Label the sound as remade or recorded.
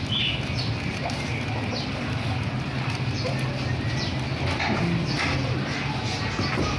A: recorded